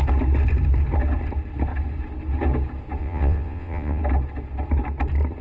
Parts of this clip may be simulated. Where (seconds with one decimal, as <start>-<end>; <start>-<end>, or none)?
3.0-4.0